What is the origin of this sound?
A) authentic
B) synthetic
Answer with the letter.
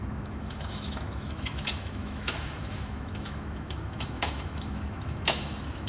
B